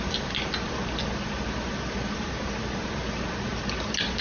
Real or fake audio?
real